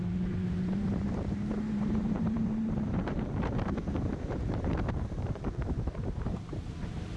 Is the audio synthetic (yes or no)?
yes